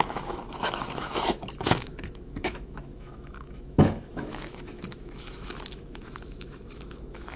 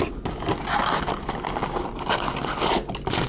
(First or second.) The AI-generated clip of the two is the first